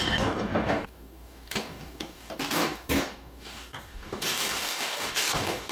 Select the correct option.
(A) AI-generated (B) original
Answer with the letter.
A